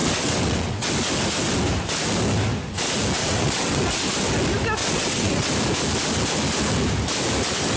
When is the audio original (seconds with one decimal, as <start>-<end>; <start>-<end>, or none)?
0.9-3.2; 3.8-4.8; 5.5-7.8